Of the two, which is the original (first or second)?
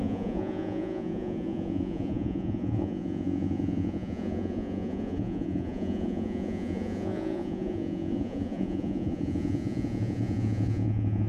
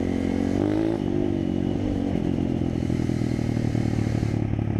second